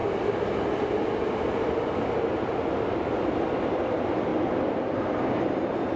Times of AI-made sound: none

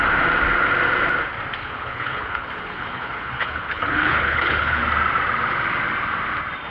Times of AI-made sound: 1.6-4.8 (codec, HILCodec)

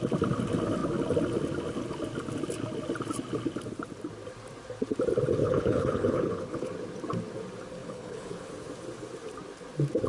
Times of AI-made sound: 5.4-6.7 (codec, HILCodec); 7.8-8.5

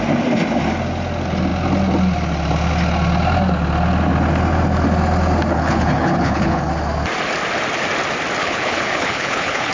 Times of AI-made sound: 5.5-6.7 (codec, HILCodec); 8.4-9.7

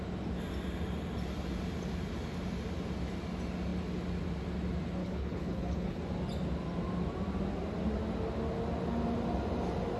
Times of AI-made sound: 5.0-6.0 (codec, HILCodec)

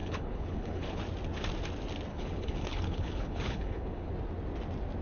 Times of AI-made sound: 0.0-1.0 (codec, HILCodec); 2.1-4.1

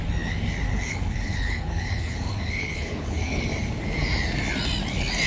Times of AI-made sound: 0.7-3.4 (codec, HILCodec)

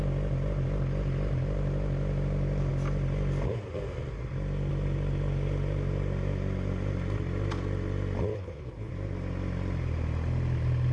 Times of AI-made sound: 8.3-8.9 (codec, HILCodec)